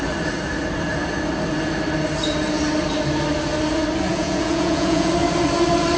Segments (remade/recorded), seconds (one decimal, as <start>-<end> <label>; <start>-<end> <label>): 0.0-4.1 recorded; 4.1-5.1 remade; 5.1-6.0 recorded